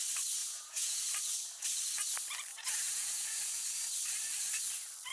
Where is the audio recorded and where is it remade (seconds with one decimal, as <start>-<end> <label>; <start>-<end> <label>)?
0.0-0.4 recorded; 0.4-1.1 remade; 1.1-2.5 recorded; 2.5-3.6 remade; 3.6-5.1 recorded